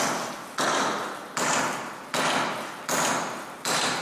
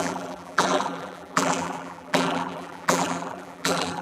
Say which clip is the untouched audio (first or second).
first